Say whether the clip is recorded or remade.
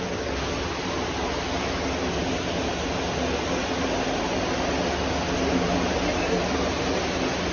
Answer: recorded